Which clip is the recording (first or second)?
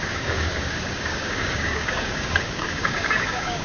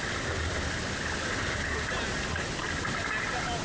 second